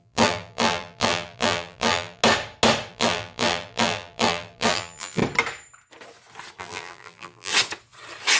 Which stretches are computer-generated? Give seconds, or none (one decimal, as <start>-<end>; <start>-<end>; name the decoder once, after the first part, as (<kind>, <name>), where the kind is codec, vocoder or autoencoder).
0.0-2.2 (vocoder, BigVGAN v2); 2.9-5.2; 6.6-7.5